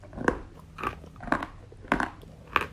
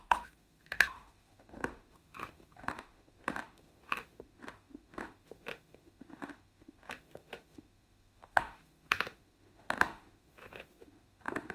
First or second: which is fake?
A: second